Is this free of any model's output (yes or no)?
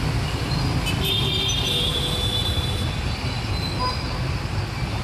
yes